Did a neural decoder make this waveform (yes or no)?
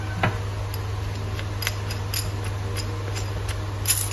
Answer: no